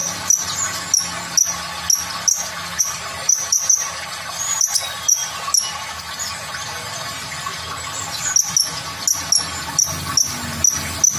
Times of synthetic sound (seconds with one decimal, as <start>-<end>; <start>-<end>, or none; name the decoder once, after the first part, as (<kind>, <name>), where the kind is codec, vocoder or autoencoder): 2.8-5.2 (vocoder, BigVGAN v2); 6.3-7.5